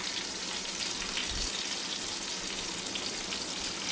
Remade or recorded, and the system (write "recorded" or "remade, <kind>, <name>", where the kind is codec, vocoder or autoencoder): recorded